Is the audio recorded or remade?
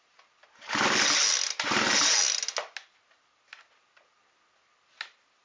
recorded